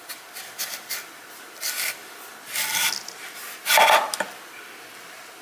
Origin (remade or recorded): recorded